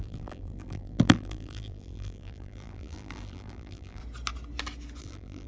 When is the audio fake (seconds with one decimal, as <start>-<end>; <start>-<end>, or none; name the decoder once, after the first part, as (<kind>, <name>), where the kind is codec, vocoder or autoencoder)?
0.0-4.0 (vocoder, BigVGAN v2); 5.0-5.5